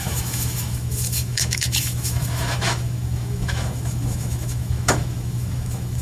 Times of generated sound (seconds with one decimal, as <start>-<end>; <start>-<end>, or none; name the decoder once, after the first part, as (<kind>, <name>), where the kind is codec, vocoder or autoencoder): 0.0-6.0 (autoencoder, DAC-VAE)